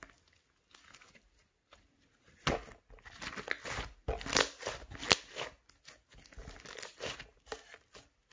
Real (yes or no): yes